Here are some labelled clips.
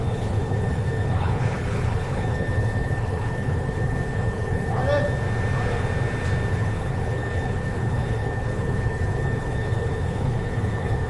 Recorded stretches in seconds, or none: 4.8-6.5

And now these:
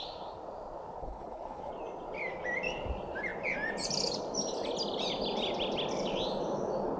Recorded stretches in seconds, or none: 0.0-1.0; 1.7-7.0